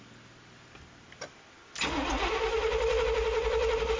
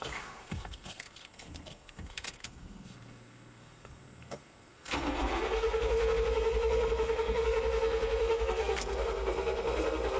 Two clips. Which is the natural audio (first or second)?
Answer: first